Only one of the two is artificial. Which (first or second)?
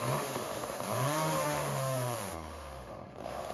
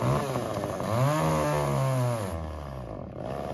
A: first